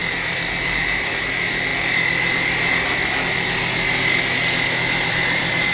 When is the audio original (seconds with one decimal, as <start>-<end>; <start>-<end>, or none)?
1.7-5.1